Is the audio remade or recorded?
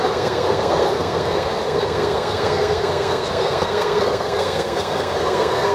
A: remade